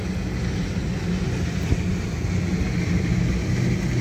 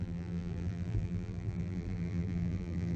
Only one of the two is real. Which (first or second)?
first